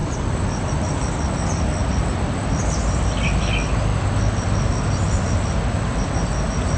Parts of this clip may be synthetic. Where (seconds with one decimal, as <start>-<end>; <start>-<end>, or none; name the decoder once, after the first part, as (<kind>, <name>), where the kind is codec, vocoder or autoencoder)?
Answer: none